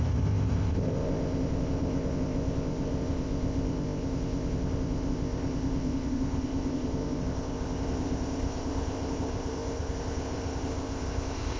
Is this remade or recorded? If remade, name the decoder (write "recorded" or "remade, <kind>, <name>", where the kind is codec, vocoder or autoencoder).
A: remade, codec, ZipCodec